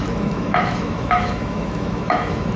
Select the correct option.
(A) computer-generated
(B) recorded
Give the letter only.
A